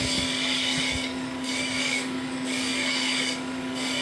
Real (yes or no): no